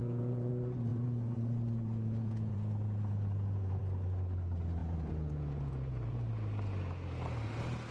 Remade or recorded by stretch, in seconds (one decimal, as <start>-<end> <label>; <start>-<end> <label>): 0.0-0.5 remade; 0.5-0.9 recorded; 0.9-3.8 remade; 3.8-4.8 recorded; 4.8-6.3 remade; 6.3-7.9 recorded